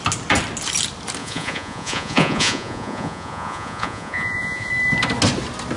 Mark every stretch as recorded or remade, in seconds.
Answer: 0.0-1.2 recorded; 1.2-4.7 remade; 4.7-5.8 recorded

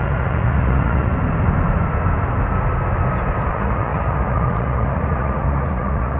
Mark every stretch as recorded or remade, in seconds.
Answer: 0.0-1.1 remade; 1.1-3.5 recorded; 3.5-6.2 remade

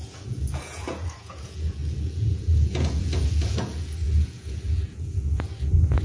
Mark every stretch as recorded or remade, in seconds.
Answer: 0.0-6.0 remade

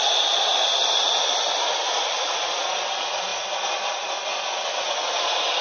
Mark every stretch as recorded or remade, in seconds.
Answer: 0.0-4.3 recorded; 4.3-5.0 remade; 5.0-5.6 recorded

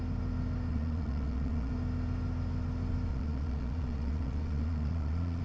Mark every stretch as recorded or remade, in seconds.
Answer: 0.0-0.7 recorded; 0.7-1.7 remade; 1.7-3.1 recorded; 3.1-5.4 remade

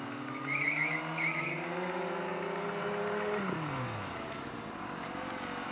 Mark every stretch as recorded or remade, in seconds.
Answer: 0.0-5.7 recorded

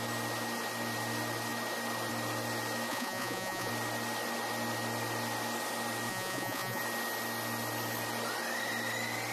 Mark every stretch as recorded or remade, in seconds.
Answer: 0.0-2.9 recorded; 2.9-3.7 remade; 3.7-6.1 recorded; 6.1-6.8 remade; 6.8-9.3 recorded